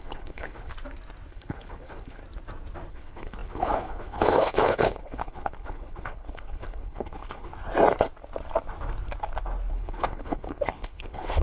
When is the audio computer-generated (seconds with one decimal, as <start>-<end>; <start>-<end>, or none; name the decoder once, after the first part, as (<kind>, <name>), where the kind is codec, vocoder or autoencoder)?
0.0-0.7 (codec, HILCodec); 1.3-2.2; 2.9-7.5; 9.7-11.4